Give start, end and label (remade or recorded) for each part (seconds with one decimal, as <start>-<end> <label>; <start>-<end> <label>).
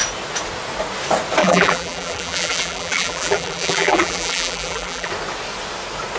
0.0-1.4 recorded; 1.4-5.1 remade; 5.1-6.2 recorded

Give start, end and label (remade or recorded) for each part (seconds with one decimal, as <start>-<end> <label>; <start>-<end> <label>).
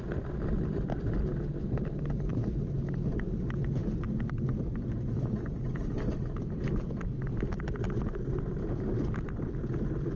0.0-10.2 recorded